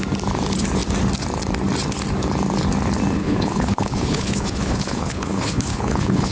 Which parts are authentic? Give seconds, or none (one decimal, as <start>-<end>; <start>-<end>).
0.0-3.2